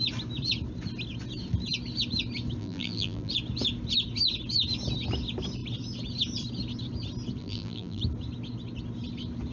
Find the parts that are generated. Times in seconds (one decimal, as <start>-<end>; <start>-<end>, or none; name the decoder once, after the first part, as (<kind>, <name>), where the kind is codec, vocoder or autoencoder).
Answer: 2.6-3.3 (vocoder, BigVGAN v2); 7.4-8.0